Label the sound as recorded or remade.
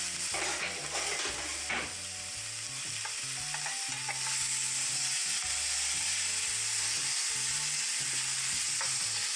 recorded